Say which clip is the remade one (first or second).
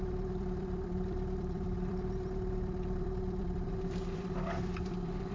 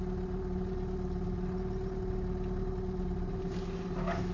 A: first